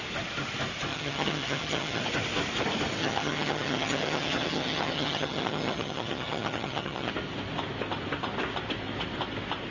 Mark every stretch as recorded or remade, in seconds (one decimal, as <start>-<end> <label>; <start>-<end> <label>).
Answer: 0.0-0.9 recorded; 0.9-2.0 remade; 2.0-3.0 recorded; 3.0-7.1 remade; 7.1-9.7 recorded